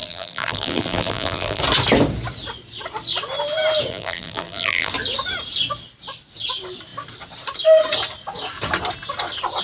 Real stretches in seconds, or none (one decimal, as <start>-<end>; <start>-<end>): 1.6-3.9; 4.9-9.6